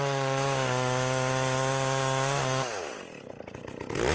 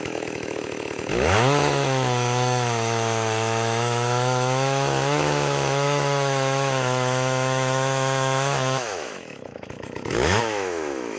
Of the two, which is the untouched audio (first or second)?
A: first